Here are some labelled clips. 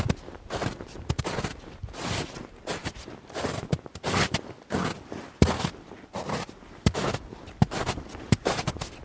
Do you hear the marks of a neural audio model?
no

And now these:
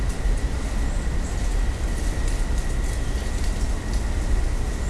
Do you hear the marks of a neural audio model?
no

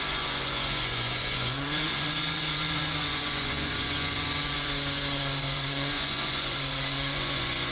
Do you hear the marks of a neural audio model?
yes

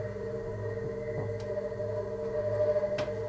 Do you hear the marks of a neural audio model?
no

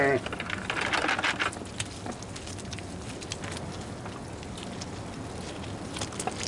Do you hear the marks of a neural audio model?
no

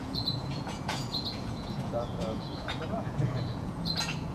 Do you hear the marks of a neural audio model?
yes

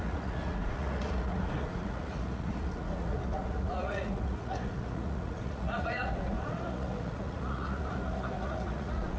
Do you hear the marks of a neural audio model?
yes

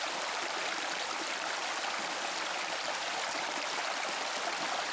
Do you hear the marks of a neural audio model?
no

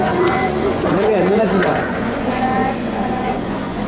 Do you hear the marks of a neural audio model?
yes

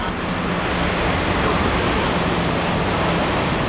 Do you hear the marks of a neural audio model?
no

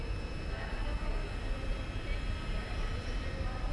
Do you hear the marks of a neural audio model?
no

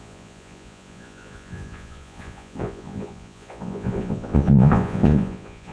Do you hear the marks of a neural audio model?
yes